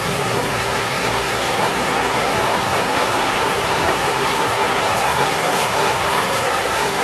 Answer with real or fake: fake